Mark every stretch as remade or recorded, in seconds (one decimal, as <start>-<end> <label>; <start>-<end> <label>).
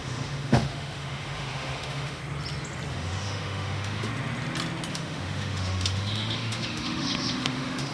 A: 0.0-2.2 remade; 2.2-2.9 recorded; 2.9-4.1 remade; 4.1-4.9 recorded; 4.9-7.9 remade